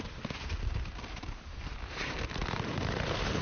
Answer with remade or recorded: remade